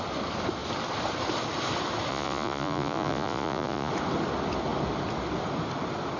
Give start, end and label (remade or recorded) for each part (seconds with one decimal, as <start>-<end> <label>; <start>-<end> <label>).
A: 0.0-2.1 recorded; 2.1-3.9 remade; 3.9-6.2 recorded